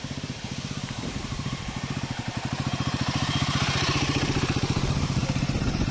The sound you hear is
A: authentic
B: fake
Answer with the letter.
B